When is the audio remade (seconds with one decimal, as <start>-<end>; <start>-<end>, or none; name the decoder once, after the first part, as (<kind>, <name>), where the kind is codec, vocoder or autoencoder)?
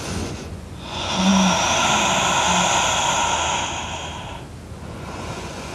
0.0-1.3 (vocoder, Vocos); 4.7-5.7